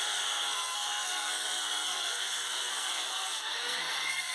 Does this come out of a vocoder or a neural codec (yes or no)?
yes